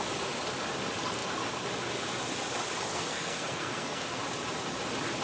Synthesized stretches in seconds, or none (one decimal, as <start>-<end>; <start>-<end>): 2.9-4.2